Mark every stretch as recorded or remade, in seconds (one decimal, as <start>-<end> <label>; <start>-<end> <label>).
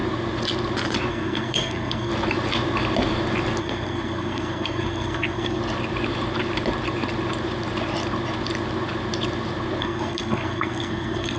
0.0-1.1 recorded; 1.1-2.1 remade; 2.1-3.6 recorded; 3.6-5.6 remade; 5.6-9.8 recorded; 9.8-11.4 remade